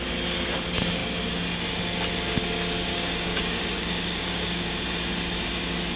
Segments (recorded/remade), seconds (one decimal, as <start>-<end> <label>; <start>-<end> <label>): 0.0-2.9 recorded; 2.9-4.7 remade; 4.7-6.0 recorded